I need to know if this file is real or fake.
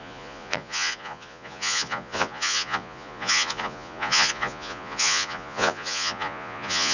fake